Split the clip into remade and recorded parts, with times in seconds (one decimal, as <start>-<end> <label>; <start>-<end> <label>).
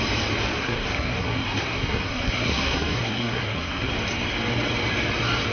0.0-0.6 recorded; 0.6-3.9 remade; 3.9-5.5 recorded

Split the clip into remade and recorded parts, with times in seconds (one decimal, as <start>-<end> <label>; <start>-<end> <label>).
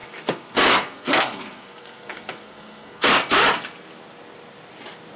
0.0-3.1 remade; 3.1-5.2 recorded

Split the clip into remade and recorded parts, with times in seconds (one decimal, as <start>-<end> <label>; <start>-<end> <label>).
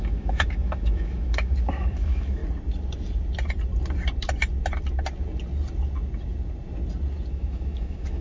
0.0-2.4 remade; 2.4-7.3 recorded; 7.3-8.2 remade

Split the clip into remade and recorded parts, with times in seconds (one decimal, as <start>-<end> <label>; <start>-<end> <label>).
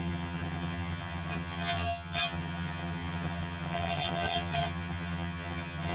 0.0-5.9 remade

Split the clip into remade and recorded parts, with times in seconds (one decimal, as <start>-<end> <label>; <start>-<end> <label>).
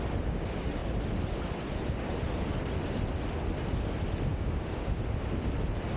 0.0-4.3 recorded; 4.3-5.0 remade; 5.0-6.0 recorded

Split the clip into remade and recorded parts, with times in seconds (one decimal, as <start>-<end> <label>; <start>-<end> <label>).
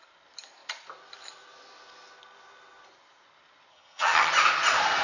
0.0-3.7 recorded; 3.7-4.3 remade; 4.3-5.0 recorded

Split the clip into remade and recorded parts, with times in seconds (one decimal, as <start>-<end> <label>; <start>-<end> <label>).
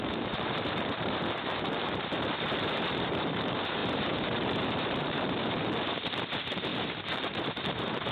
0.0-8.1 remade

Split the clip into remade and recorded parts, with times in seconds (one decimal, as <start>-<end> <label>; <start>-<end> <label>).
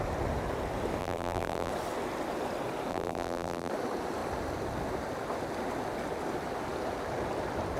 0.0-1.0 recorded; 1.0-1.7 remade; 1.7-2.9 recorded; 2.9-3.7 remade; 3.7-7.8 recorded